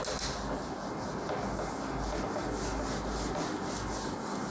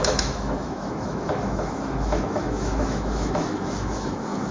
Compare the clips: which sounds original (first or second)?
first